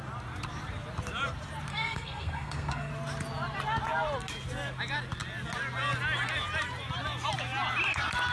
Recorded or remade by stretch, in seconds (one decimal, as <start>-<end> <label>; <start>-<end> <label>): 0.0-1.7 recorded; 1.7-2.9 remade; 2.9-8.3 recorded